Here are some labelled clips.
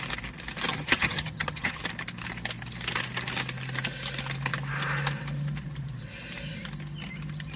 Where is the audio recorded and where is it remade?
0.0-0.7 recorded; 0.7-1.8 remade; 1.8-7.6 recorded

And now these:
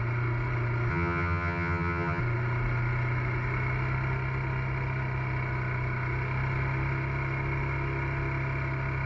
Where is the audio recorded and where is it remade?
0.0-0.9 recorded; 0.9-2.2 remade; 2.2-9.1 recorded

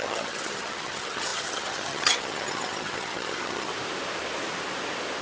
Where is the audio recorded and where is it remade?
0.0-3.7 remade; 3.7-5.2 recorded

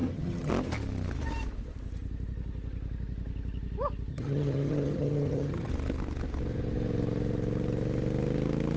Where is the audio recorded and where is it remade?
0.0-0.5 remade; 0.5-4.1 recorded; 4.1-5.7 remade; 5.7-8.8 recorded